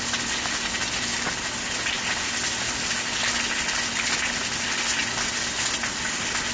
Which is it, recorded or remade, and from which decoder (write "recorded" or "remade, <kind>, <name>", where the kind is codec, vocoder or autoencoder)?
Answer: recorded